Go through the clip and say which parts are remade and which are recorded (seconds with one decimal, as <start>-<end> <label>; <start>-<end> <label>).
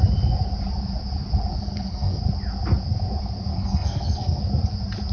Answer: 0.0-1.5 recorded; 1.5-2.2 remade; 2.2-3.5 recorded; 3.5-4.4 remade; 4.4-5.1 recorded